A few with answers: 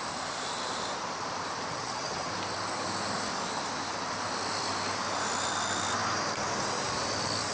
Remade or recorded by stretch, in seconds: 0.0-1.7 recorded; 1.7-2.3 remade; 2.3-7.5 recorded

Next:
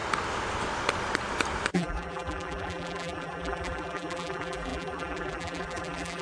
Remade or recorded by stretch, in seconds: 0.0-1.7 recorded; 1.7-6.2 remade